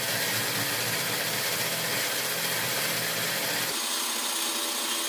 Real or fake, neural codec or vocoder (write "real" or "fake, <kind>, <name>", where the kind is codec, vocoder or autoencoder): real